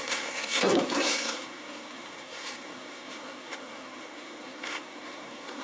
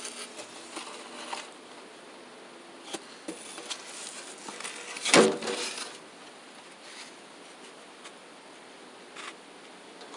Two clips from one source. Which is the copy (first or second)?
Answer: first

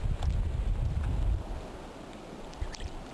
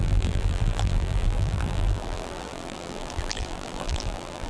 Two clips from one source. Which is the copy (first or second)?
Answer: second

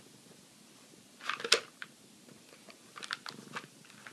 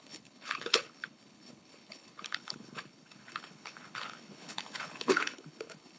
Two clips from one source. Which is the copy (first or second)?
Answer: second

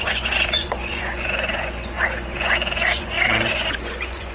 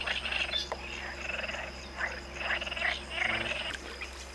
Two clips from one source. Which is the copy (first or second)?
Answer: first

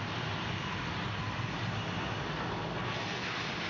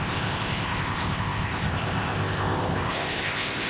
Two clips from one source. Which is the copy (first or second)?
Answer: second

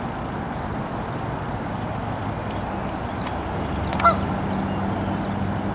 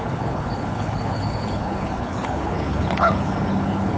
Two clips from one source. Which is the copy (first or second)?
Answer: second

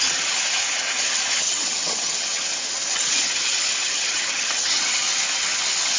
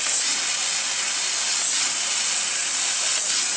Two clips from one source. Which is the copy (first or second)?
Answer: first